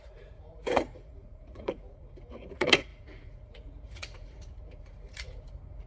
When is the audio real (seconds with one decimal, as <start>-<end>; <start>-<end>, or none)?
none